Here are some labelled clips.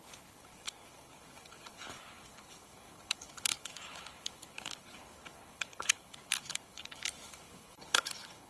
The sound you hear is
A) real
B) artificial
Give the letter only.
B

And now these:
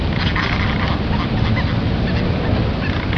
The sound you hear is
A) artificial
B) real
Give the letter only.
B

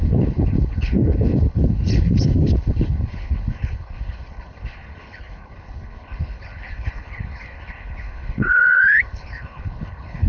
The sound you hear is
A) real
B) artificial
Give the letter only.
B